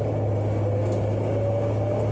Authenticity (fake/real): real